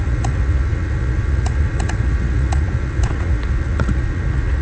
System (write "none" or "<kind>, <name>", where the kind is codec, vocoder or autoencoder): vocoder, Vocos